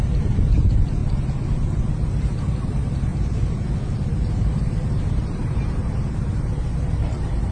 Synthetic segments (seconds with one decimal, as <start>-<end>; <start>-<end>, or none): 0.0-1.0; 2.1-3.1; 4.0-7.5